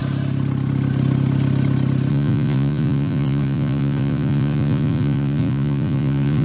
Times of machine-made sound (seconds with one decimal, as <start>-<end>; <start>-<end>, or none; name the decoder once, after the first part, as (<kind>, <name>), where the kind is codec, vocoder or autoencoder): 2.1-6.4 (vocoder, Vocos)